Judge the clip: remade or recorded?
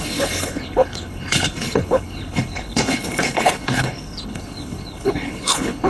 remade